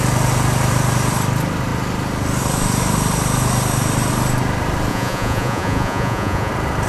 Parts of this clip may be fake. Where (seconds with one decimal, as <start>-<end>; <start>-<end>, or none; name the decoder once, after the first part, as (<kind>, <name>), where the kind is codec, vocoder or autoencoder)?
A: 4.9-6.5 (vocoder, Vocos)